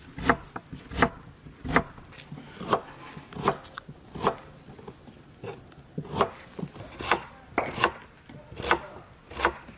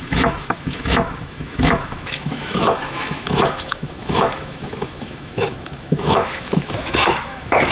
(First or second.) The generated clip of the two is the second